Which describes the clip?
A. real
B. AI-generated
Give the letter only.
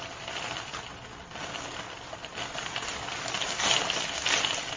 A